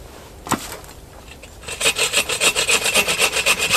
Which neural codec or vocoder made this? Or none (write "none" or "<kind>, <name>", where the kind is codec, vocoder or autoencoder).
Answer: none